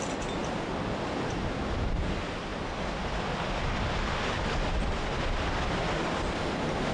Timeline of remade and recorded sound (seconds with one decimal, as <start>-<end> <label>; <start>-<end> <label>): 0.0-0.4 recorded; 0.4-1.9 remade; 1.9-2.5 recorded; 2.5-5.5 remade; 5.5-6.9 recorded